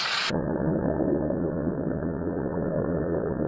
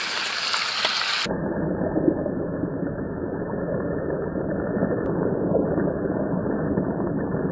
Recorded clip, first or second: second